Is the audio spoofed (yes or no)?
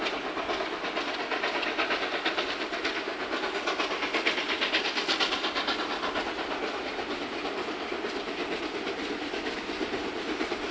no